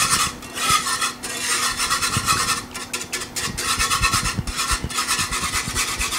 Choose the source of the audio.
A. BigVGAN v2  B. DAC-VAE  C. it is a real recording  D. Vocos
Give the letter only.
C